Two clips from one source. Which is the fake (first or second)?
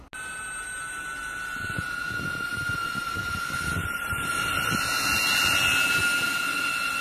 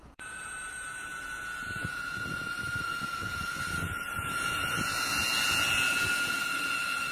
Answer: second